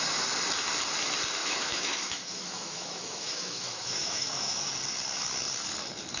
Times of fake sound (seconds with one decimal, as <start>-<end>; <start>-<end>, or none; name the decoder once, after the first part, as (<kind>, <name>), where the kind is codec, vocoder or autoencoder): 1.4-4.7 (autoencoder, DAC-VAE)